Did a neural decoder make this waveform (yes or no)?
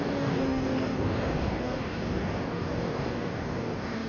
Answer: yes